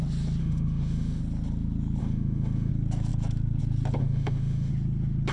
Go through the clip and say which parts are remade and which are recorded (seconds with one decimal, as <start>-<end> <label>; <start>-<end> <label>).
0.0-0.4 recorded; 0.4-1.2 remade; 1.2-2.0 recorded; 2.0-2.7 remade; 2.7-4.0 recorded; 4.0-4.7 remade; 4.7-5.3 recorded